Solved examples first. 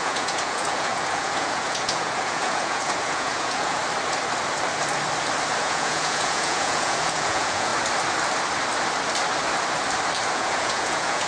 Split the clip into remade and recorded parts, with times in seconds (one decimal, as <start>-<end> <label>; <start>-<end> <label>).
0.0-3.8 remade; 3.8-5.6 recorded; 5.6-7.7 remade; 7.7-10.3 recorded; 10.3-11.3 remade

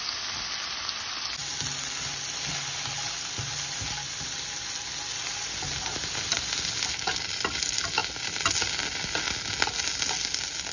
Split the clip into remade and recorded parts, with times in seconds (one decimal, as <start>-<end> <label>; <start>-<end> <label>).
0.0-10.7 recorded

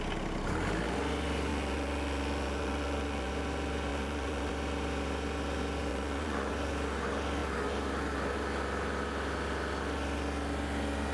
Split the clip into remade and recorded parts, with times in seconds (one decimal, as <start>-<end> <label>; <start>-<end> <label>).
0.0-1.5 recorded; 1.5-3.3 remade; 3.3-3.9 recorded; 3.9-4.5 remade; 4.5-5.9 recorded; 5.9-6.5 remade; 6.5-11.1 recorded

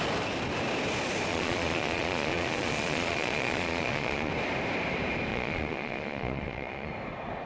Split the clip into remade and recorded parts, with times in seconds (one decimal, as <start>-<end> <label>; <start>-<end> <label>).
0.0-1.3 recorded; 1.3-4.3 remade; 4.3-5.3 recorded; 5.3-6.9 remade; 6.9-7.5 recorded

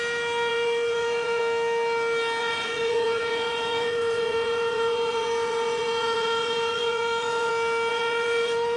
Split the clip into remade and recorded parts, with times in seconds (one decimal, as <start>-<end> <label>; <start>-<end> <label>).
0.0-0.5 recorded; 0.5-1.4 remade; 1.4-2.4 recorded; 2.4-7.5 remade; 7.5-7.9 recorded; 7.9-8.8 remade

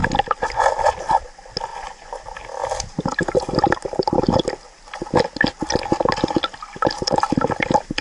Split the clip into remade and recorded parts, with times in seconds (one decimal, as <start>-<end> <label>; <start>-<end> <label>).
0.0-1.7 recorded; 1.7-2.2 remade; 2.2-8.0 recorded

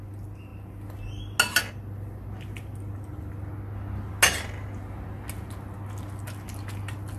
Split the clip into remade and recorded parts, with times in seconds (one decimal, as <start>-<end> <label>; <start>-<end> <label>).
0.0-7.2 recorded

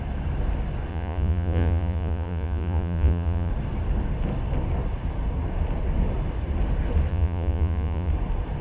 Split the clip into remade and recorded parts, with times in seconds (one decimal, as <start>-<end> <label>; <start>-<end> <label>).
0.0-0.9 recorded; 0.9-3.5 remade; 3.5-7.1 recorded; 7.1-8.1 remade; 8.1-8.6 recorded